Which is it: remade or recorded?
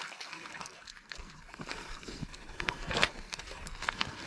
remade